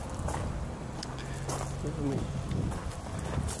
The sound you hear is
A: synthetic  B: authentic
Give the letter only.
B